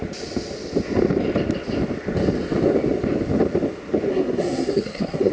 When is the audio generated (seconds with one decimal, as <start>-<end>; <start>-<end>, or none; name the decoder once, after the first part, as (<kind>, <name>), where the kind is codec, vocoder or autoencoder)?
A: 4.1-5.3 (codec, SNAC)